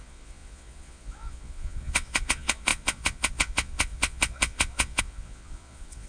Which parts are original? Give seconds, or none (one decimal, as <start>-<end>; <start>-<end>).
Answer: none